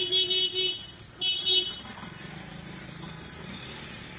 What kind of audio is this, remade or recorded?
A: recorded